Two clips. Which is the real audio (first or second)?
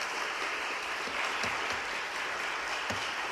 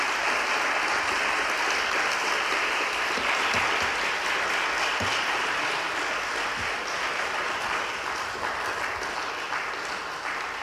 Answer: second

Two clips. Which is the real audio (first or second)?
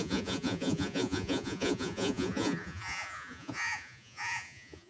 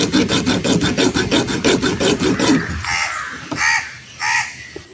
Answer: second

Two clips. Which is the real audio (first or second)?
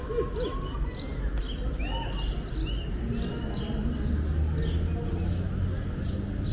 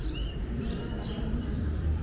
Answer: first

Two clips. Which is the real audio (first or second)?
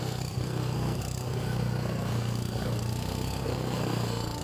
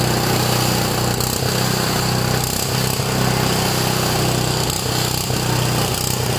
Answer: second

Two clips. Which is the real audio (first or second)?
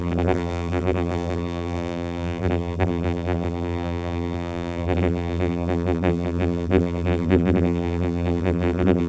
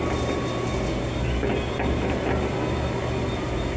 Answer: second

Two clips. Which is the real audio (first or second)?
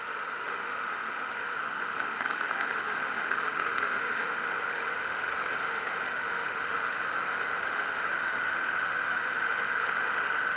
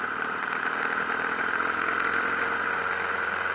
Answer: second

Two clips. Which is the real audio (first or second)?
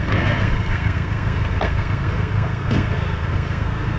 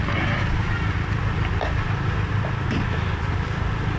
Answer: second